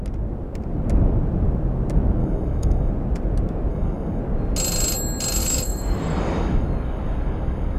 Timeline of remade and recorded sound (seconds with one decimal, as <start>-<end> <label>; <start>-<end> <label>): 0.0-2.2 recorded; 2.2-2.9 remade; 2.9-3.7 recorded; 3.7-4.2 remade; 4.2-5.4 recorded; 5.4-7.8 remade

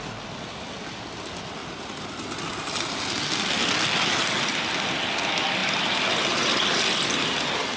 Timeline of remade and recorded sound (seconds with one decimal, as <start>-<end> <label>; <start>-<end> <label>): 0.0-7.8 recorded

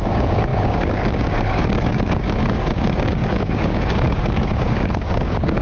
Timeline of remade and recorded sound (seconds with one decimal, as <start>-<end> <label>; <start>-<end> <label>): 0.0-5.6 remade

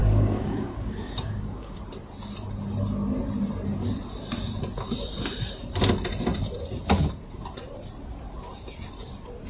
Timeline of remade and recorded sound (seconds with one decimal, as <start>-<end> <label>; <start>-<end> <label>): 0.0-1.8 remade; 1.8-9.5 recorded